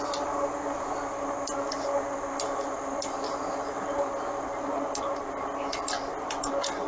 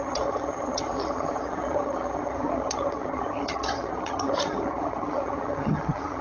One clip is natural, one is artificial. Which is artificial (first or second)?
second